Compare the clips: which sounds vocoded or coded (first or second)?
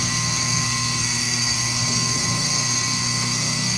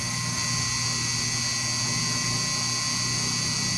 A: first